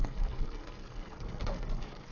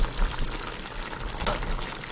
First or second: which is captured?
second